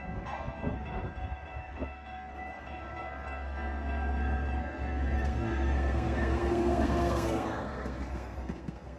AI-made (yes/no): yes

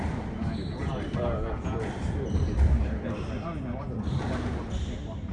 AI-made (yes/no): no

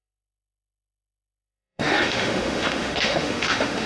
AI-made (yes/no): yes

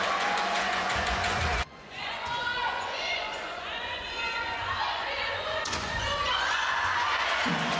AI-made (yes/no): yes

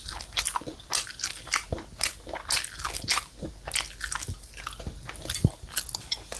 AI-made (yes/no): no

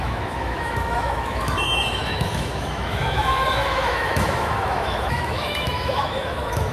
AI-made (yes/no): yes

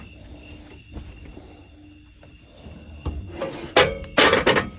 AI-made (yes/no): no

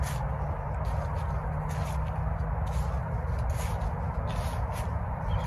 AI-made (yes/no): no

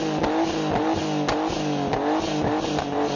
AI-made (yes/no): no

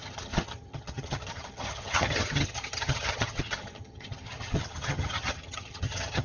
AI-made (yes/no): yes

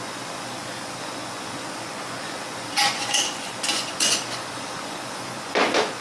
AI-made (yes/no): yes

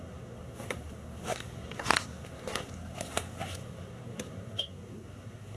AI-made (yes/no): yes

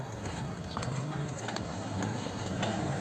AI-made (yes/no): yes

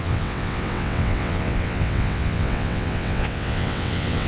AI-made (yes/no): yes